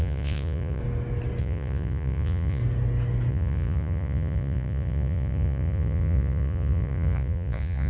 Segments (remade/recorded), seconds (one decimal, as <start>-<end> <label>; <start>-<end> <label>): 0.0-0.8 remade; 0.8-1.4 recorded; 1.4-2.6 remade; 2.6-3.3 recorded; 3.3-7.9 remade